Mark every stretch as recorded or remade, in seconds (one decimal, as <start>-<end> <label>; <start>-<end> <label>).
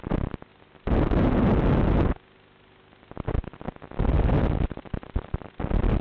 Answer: 0.0-6.0 recorded